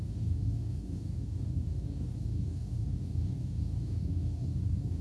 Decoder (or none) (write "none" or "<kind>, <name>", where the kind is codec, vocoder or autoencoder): codec, DAC